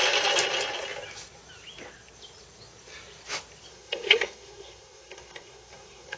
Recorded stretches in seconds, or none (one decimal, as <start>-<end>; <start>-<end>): 0.0-3.7